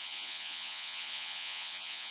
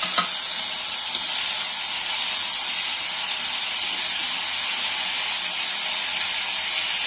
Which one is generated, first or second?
first